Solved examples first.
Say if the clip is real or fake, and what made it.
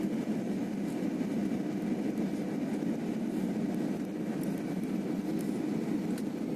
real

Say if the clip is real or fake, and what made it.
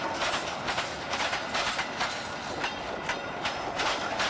real